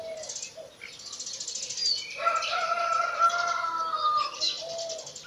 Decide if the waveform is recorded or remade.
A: recorded